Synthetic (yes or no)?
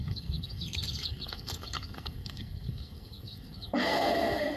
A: yes